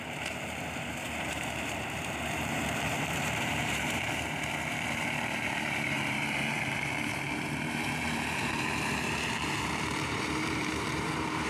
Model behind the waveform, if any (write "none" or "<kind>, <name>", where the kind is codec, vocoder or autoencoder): vocoder, BigVGAN v2